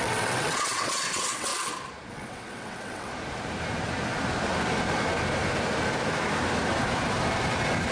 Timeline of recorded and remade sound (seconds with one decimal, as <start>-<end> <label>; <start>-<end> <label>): 0.0-1.5 remade; 1.5-2.1 recorded; 2.1-3.1 remade; 3.1-7.9 recorded